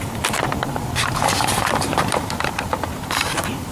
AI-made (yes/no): yes